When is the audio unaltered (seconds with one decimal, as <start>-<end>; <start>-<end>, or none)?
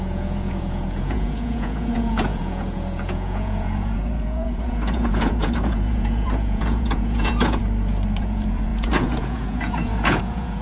7.6-8.2